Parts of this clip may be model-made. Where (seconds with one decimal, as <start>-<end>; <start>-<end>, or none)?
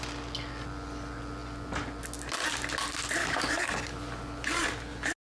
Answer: 3.2-3.7